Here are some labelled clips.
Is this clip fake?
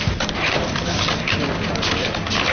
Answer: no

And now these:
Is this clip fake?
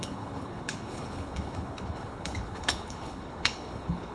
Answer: yes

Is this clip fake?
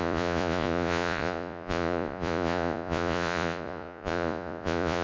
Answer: yes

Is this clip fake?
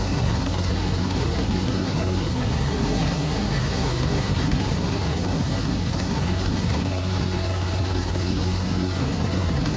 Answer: yes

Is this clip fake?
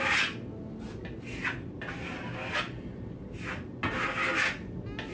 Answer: no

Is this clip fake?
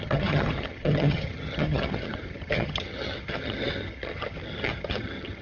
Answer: yes